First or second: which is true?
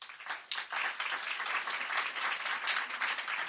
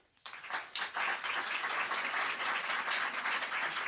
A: first